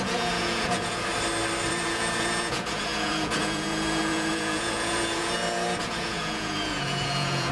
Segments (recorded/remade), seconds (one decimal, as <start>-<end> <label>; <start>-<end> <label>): 0.0-1.1 remade; 1.1-1.7 recorded; 1.7-7.5 remade